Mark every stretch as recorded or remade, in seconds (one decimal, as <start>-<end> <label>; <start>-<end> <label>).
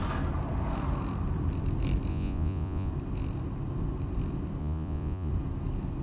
0.0-2.1 recorded; 2.1-2.9 remade; 2.9-4.6 recorded; 4.6-5.3 remade; 5.3-6.0 recorded